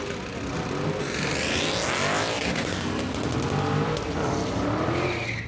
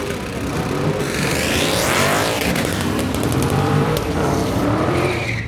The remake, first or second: second